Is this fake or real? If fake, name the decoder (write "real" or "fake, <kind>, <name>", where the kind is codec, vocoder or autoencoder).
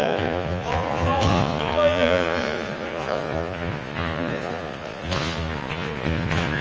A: fake, vocoder, Vocos